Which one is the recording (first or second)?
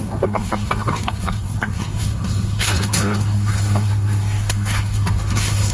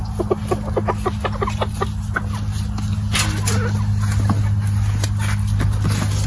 second